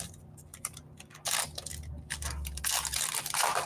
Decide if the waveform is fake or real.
real